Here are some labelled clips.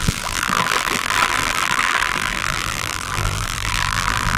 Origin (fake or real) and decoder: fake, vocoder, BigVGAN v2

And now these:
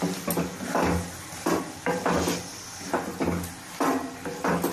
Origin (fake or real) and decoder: real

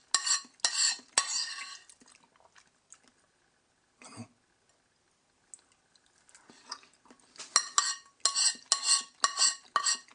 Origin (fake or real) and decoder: real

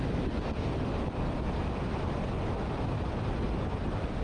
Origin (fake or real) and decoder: real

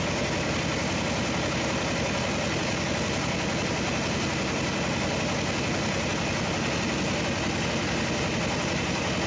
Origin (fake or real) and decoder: real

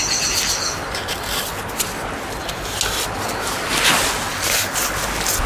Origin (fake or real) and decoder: real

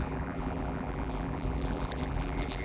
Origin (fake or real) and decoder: fake, vocoder, BigVGAN v2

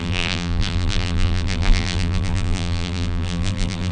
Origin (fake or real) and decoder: fake, vocoder, BigVGAN v2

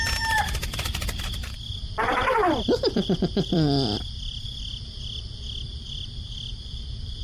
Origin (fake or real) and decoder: fake, vocoder, BigVGAN v2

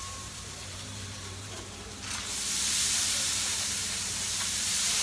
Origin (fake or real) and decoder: fake, vocoder, BigVGAN v2